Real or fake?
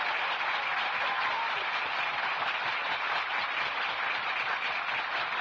fake